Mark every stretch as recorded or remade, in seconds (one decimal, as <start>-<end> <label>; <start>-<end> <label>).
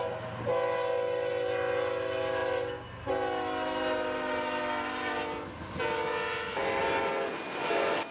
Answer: 0.0-8.1 recorded